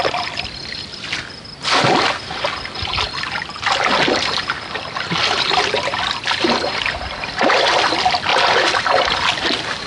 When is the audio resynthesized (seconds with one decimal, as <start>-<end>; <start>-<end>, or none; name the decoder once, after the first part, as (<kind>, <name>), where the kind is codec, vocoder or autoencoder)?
none